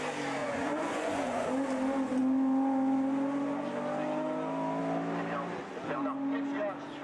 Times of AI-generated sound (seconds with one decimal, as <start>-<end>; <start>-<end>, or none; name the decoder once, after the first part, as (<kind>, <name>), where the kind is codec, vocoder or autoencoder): 0.4-1.5 (vocoder, Vocos)